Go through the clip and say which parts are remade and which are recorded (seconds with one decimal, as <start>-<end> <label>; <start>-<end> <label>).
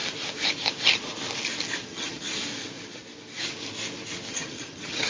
0.0-1.8 recorded; 1.8-2.4 remade; 2.4-4.3 recorded; 4.3-5.1 remade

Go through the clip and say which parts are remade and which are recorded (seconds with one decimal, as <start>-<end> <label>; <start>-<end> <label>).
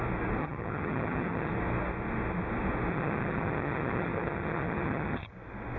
0.0-0.4 recorded; 0.4-1.5 remade; 1.5-2.9 recorded; 2.9-5.3 remade; 5.3-5.8 recorded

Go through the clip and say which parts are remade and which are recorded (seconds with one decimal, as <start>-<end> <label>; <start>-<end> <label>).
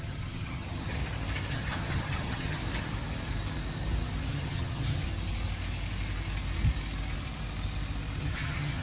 0.0-1.0 remade; 1.0-1.5 recorded; 1.5-2.6 remade; 2.6-4.3 recorded; 4.3-5.1 remade; 5.1-8.2 recorded; 8.2-8.8 remade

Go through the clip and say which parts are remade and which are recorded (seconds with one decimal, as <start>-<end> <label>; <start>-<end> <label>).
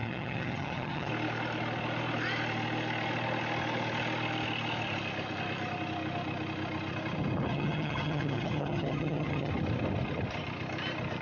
0.0-1.1 remade; 1.1-7.5 recorded; 7.5-9.5 remade; 9.5-11.2 recorded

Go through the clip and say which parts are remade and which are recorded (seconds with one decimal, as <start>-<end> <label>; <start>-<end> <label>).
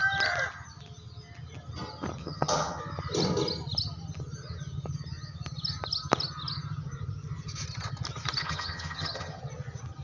0.0-2.2 recorded; 2.2-2.8 remade; 2.8-8.4 recorded; 8.4-9.4 remade; 9.4-10.0 recorded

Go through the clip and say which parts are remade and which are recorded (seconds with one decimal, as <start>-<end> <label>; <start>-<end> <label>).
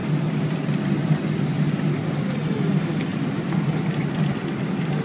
0.0-5.0 recorded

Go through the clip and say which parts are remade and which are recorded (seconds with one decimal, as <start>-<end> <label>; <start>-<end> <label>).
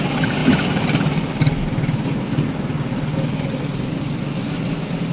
0.0-5.1 recorded